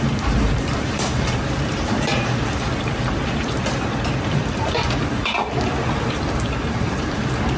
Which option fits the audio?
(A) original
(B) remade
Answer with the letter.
B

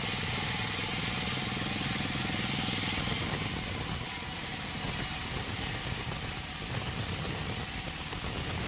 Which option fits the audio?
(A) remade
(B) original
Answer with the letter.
B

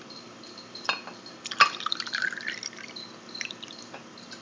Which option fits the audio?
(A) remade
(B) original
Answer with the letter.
A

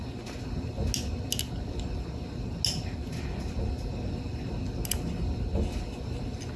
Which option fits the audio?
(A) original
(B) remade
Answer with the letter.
A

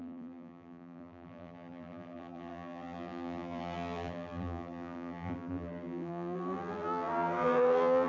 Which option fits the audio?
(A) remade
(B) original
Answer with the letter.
A